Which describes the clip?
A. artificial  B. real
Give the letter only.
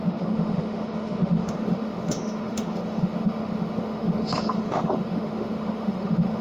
A